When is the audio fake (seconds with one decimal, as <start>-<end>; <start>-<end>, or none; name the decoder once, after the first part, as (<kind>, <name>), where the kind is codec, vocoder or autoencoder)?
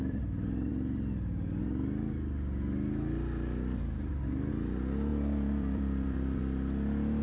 5.1-6.4 (vocoder, BigVGAN v2)